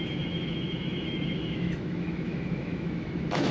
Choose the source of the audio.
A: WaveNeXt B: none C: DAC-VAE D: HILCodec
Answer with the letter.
C